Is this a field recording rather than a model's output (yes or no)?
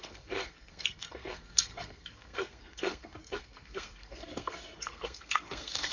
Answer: no